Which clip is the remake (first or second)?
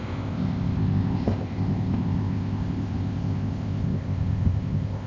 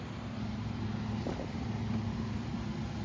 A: first